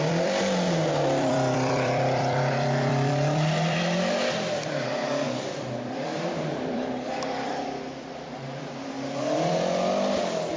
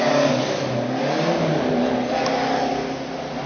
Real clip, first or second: second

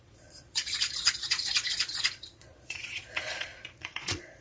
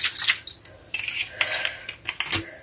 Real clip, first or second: second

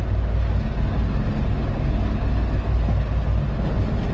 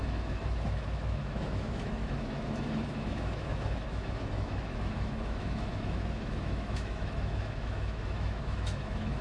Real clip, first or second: first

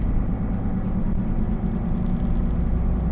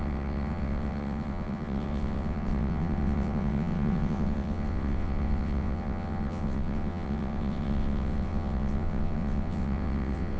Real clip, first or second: first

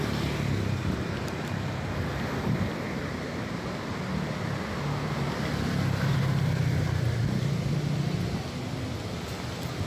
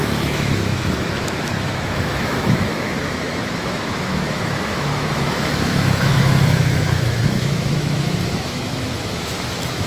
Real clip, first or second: first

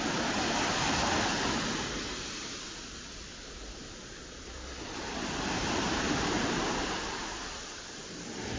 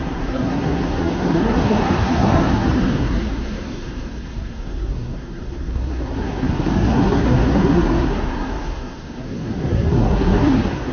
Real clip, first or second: first